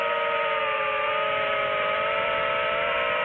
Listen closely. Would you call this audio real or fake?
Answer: fake